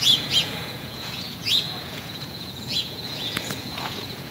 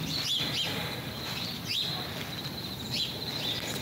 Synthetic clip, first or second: first